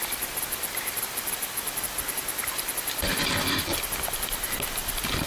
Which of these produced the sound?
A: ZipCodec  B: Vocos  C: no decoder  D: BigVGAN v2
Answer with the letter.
C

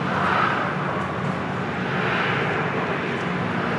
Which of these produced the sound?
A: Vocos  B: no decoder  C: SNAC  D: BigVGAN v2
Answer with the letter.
B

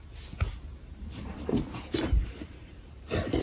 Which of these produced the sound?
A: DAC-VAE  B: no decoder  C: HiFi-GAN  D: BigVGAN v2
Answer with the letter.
D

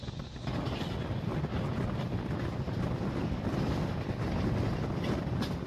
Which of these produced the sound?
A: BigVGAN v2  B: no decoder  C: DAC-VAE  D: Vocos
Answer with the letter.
B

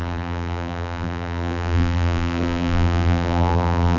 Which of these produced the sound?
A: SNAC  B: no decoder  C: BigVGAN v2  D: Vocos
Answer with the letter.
C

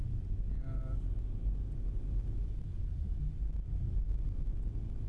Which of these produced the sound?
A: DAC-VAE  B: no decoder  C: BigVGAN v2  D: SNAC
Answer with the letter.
B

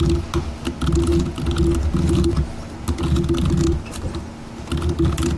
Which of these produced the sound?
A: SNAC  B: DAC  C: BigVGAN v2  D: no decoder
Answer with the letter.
D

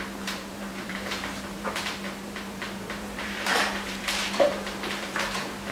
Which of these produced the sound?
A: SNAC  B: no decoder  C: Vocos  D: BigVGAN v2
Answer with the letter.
D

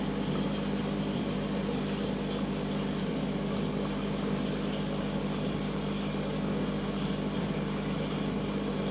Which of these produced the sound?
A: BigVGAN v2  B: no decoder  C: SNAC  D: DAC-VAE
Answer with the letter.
A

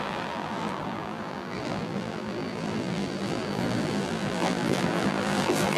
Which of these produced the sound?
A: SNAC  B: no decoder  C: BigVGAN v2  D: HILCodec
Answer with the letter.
C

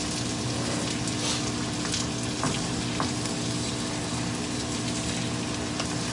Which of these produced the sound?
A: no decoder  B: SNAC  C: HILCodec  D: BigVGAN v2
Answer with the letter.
A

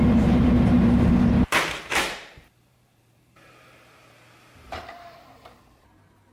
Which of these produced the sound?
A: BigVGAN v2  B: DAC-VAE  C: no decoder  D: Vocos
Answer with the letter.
A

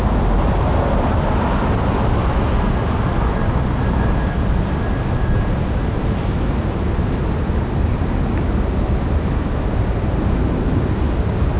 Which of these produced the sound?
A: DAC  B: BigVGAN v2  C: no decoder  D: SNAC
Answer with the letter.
C